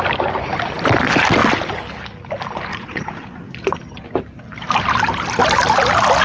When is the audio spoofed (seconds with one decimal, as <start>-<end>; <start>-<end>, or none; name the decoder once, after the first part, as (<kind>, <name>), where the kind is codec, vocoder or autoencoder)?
2.7-3.5 (vocoder, Vocos)